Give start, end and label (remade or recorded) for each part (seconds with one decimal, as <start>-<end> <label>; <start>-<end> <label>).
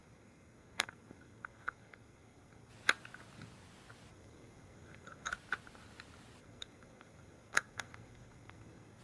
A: 0.0-2.7 remade; 2.7-4.1 recorded; 4.1-5.3 remade; 5.3-6.4 recorded; 6.4-9.0 remade